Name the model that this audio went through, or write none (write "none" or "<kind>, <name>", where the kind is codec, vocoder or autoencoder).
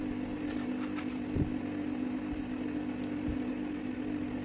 none